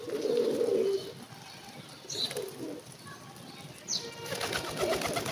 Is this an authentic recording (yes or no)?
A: yes